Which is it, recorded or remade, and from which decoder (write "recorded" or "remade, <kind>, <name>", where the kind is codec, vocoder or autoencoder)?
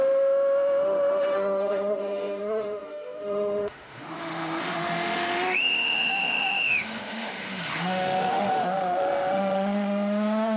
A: remade, autoencoder, DAC-VAE